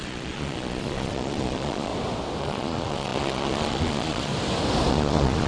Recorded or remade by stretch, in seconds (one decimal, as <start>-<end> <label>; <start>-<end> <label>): 0.0-1.9 remade; 1.9-2.4 recorded; 2.4-4.3 remade; 4.3-4.9 recorded; 4.9-5.5 remade